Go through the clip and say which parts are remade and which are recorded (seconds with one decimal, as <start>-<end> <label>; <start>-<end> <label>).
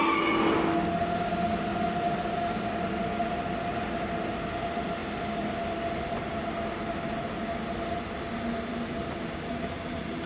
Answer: 0.0-10.3 recorded